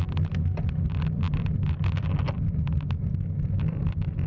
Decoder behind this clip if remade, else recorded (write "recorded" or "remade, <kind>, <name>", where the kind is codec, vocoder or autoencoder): recorded